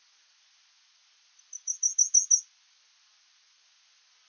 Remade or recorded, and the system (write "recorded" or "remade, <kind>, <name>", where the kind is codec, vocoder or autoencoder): recorded